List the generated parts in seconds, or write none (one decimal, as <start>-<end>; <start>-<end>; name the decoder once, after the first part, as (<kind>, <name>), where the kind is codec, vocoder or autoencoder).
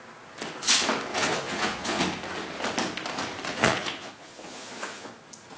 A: 1.1-2.0 (vocoder, Vocos); 3.5-5.1